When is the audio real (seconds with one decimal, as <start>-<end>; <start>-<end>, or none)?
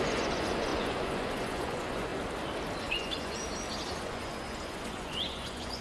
2.1-2.8; 3.4-3.9